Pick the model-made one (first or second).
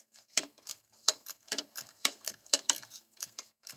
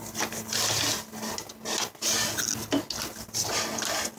first